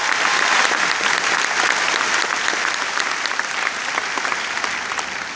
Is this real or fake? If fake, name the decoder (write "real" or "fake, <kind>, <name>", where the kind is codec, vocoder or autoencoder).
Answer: real